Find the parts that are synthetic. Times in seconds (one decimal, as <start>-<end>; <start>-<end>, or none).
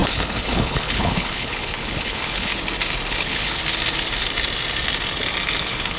0.0-2.5; 3.1-3.6; 5.6-6.0